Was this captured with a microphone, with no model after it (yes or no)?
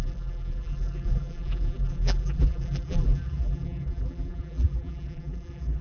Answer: no